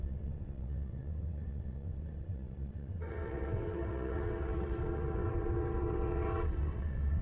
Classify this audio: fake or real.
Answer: fake